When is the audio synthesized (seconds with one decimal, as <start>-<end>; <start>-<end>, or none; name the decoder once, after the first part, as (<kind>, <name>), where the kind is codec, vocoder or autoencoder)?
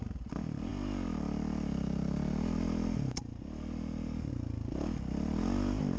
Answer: none